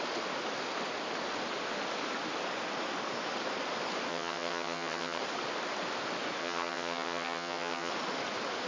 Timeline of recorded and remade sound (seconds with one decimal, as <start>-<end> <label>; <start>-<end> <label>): 0.0-4.1 recorded; 4.1-5.2 remade; 5.2-6.4 recorded; 6.4-7.9 remade; 7.9-8.7 recorded